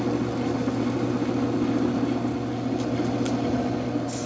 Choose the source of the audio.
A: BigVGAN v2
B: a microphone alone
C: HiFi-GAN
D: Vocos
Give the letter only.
B